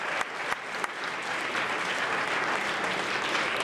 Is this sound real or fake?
real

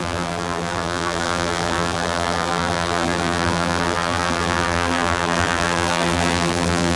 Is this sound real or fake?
fake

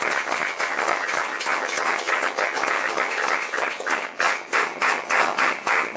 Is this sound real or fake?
fake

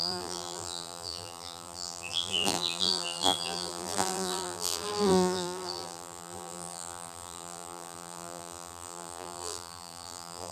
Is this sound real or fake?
fake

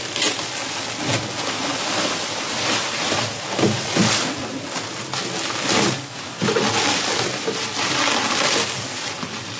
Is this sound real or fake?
real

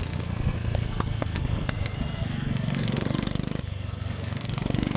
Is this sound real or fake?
fake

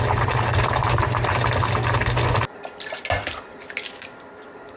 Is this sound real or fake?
real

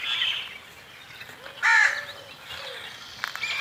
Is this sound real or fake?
real